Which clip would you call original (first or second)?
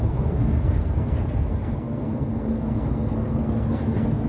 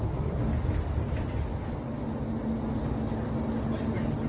second